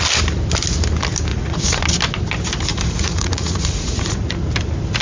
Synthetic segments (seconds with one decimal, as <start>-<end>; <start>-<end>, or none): 1.3-1.8; 2.7-4.4